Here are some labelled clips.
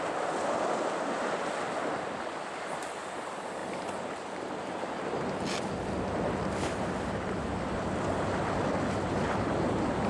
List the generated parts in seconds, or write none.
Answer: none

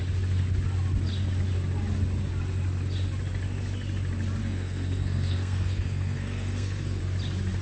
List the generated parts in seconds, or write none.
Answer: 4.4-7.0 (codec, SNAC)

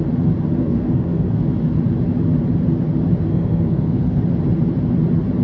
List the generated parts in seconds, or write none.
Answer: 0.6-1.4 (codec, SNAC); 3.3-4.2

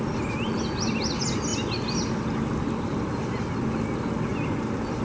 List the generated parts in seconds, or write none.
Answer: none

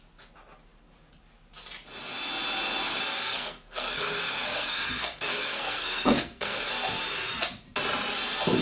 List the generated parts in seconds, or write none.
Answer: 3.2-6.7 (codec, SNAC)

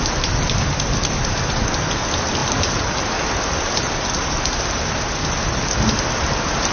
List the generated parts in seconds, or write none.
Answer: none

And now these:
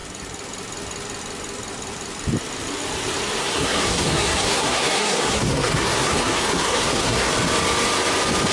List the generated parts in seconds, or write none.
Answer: 3.4-7.3 (codec, SNAC)